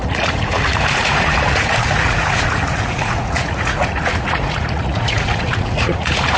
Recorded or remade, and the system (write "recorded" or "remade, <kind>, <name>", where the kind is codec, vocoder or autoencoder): remade, vocoder, Vocos